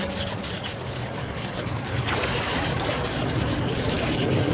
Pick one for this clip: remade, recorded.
remade